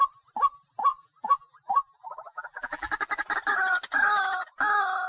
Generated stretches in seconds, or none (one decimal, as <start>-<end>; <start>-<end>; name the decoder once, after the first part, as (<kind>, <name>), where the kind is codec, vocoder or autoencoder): 0.9-2.9 (vocoder, BigVGAN v2)